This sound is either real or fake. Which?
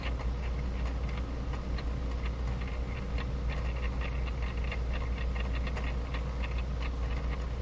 real